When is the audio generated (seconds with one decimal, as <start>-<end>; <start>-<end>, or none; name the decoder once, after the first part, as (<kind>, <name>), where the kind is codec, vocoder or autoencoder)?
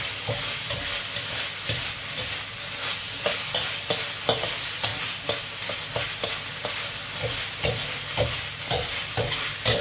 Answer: none